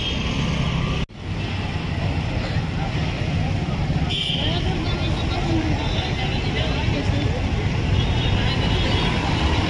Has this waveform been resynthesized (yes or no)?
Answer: no